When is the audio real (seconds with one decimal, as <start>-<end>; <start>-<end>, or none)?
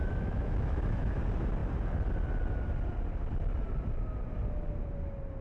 1.2-5.4